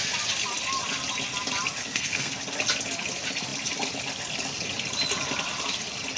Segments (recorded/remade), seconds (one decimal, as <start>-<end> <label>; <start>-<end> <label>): 0.0-1.8 recorded; 1.8-2.3 remade; 2.3-6.2 recorded

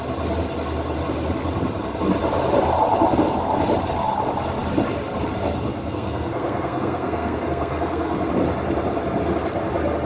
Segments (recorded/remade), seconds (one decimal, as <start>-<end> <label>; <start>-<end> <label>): 0.0-5.7 recorded; 5.7-8.3 remade; 8.3-10.0 recorded

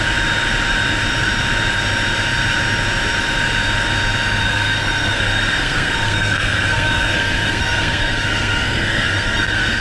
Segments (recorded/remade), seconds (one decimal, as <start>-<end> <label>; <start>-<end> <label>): 0.0-4.4 recorded; 4.4-9.8 remade

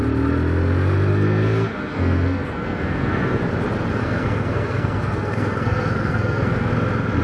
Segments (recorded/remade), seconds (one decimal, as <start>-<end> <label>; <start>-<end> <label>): 0.0-1.1 recorded; 1.1-3.4 remade; 3.4-4.0 recorded; 4.0-6.7 remade; 6.7-7.2 recorded

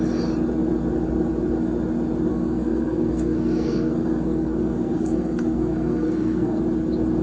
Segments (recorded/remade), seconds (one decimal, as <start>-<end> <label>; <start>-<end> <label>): 0.0-2.3 recorded; 2.3-6.6 remade; 6.6-7.2 recorded

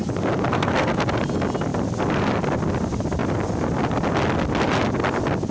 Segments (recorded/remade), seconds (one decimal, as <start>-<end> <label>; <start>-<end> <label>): 0.0-0.5 recorded; 0.5-1.0 remade; 1.0-5.5 recorded

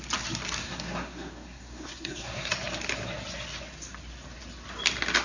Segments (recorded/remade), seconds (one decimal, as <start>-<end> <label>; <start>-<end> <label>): 0.0-0.6 recorded; 0.6-2.5 remade; 2.5-5.2 recorded

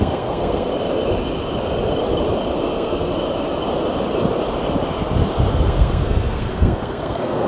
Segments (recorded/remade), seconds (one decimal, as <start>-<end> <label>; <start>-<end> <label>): 0.0-0.7 remade; 0.7-2.6 recorded; 2.6-3.1 remade; 3.1-5.5 recorded; 5.5-7.5 remade